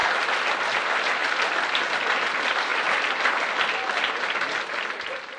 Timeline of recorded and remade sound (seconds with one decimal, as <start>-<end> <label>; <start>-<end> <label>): 0.0-5.4 recorded

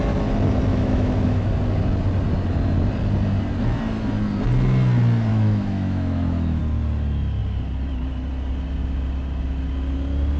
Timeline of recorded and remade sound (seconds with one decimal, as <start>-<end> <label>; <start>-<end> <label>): 0.0-0.7 recorded; 0.7-1.5 remade; 1.5-5.3 recorded; 5.3-6.6 remade; 6.6-10.4 recorded

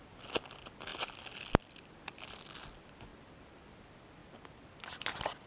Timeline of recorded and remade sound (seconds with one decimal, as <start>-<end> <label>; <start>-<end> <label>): 0.0-5.5 recorded